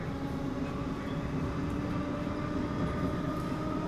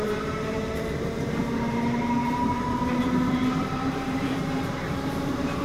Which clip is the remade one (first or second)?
second